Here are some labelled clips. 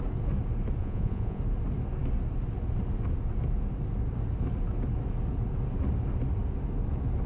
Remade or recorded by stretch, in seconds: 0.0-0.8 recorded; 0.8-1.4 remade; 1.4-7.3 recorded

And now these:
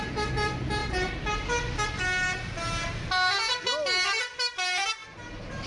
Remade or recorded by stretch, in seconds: 0.0-5.7 recorded